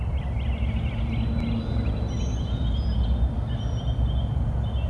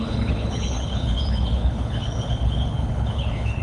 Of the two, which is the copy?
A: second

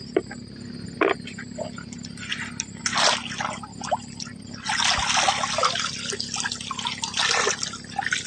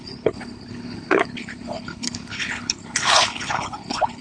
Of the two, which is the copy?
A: second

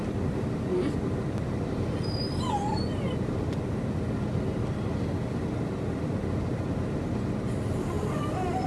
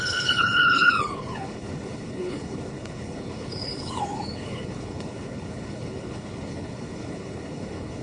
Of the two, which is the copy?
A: second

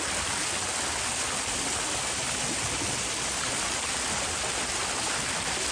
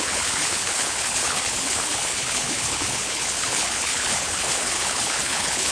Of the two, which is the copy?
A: second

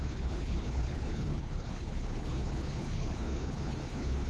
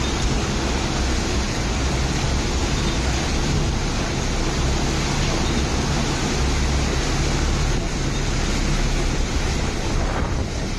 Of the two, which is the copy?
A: first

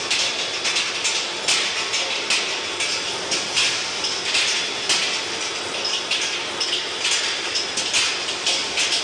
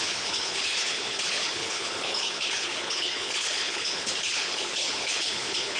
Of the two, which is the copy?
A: second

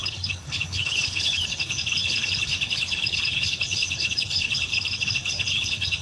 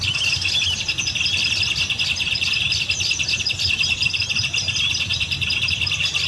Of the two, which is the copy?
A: first